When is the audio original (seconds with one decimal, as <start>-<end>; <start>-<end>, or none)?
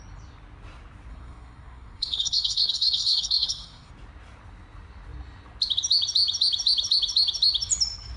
0.0-1.1; 3.9-8.2